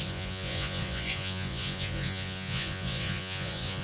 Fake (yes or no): yes